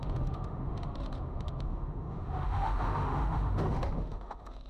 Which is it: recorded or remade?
remade